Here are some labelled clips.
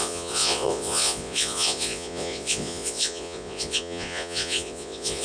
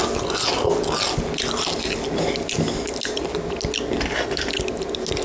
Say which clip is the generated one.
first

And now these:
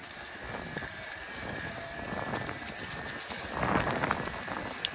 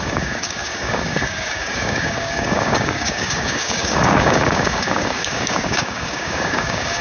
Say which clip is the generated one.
second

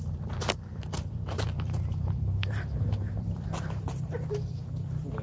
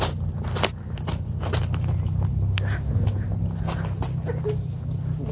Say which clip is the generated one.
first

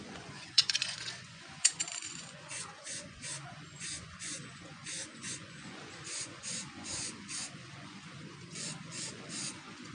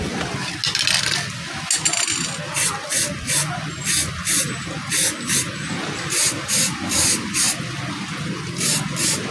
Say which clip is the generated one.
first